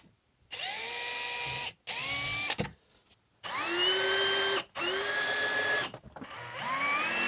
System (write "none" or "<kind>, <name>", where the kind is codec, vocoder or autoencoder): none